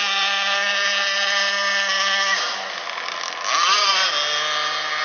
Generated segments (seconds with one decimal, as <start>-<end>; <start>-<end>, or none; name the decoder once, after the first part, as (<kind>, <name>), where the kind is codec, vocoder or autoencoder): none